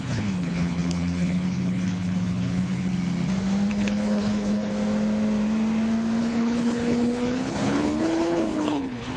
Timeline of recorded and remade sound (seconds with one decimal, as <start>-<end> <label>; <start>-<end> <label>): 0.0-2.9 remade; 2.9-3.7 recorded; 3.7-4.7 remade; 4.7-6.2 recorded; 6.2-9.2 remade